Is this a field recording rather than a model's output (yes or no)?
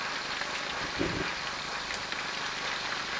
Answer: yes